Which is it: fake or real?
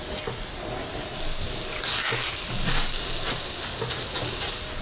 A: real